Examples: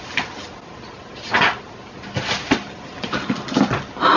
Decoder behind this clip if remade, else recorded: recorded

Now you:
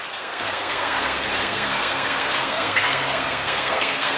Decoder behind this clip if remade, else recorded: remade, codec, SNAC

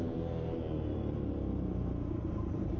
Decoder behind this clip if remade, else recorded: remade, vocoder, BigVGAN v2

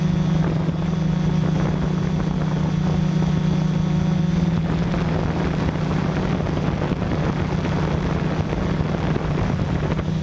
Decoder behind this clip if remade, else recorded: recorded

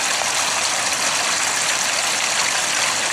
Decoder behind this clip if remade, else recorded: recorded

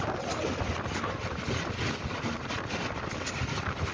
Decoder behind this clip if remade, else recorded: recorded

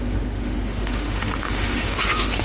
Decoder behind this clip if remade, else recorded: remade, autoencoder, DAC-VAE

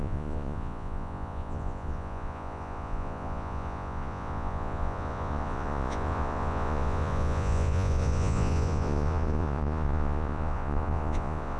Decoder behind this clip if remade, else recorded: remade, vocoder, Vocos